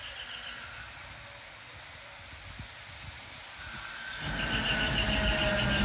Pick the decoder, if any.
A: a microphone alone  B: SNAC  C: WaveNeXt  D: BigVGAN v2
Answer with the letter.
A